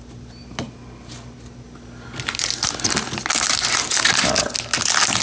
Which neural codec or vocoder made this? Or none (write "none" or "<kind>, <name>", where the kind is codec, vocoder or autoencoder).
none